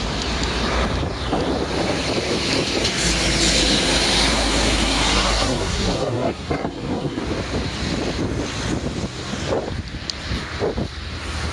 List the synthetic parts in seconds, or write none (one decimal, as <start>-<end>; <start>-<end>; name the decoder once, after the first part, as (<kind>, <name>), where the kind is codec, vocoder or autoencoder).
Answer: 4.3-7.2 (codec, SNAC)